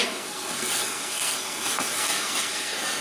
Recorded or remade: remade